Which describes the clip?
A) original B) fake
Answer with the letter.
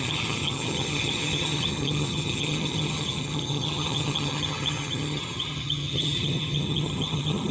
B